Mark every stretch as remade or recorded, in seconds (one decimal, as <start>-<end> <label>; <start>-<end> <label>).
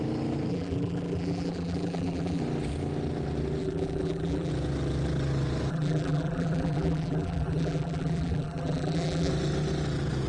0.0-0.5 recorded; 0.5-2.4 remade; 2.4-3.6 recorded; 3.6-4.5 remade; 4.5-5.7 recorded; 5.7-9.3 remade; 9.3-10.3 recorded